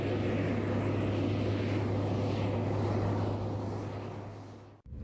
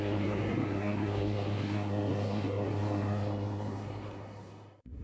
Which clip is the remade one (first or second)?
second